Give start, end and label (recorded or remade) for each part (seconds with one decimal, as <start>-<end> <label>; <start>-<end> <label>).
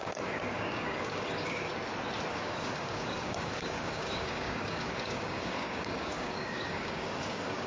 0.0-1.7 remade; 1.7-2.3 recorded; 2.3-7.7 remade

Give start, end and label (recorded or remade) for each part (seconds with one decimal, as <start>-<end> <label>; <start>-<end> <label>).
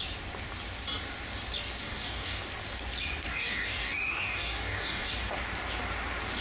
0.0-1.8 recorded; 1.8-2.4 remade; 2.4-3.3 recorded; 3.3-5.3 remade; 5.3-6.4 recorded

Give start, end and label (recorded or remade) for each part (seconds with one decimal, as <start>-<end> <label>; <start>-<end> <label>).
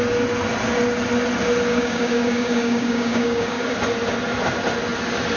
0.0-1.7 recorded; 1.7-3.7 remade; 3.7-5.4 recorded